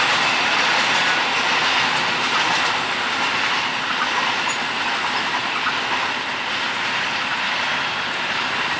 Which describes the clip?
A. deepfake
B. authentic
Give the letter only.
B